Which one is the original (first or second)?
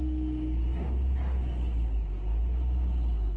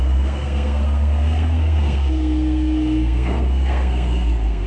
first